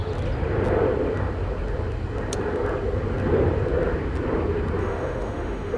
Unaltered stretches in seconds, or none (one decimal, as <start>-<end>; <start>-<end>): 0.0-4.8